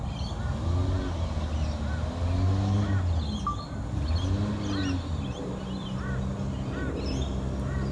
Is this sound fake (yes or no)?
no